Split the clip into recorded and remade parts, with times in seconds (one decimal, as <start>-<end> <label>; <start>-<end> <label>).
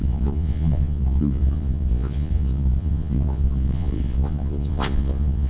0.0-5.5 remade